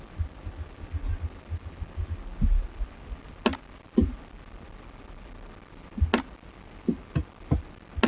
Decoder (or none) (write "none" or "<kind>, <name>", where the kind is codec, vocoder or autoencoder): none